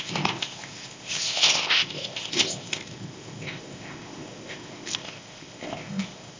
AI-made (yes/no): yes